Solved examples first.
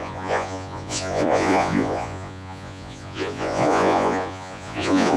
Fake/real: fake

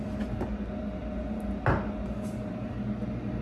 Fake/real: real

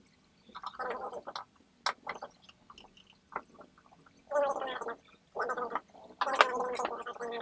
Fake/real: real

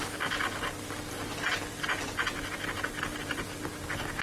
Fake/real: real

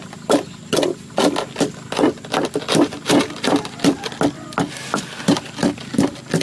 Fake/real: real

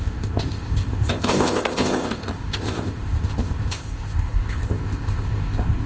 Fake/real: fake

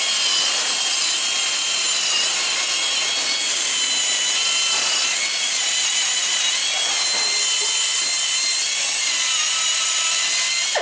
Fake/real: real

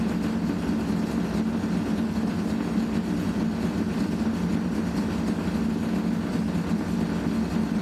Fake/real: real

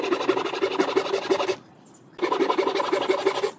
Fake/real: real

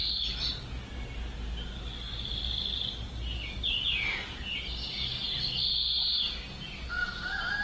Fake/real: real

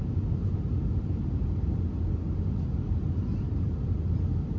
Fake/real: real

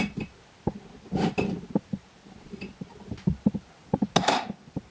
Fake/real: real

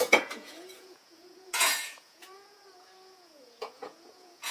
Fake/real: fake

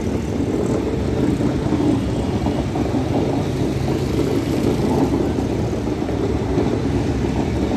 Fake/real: real